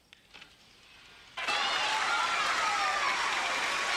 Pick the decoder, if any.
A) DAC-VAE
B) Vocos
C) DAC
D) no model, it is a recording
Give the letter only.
D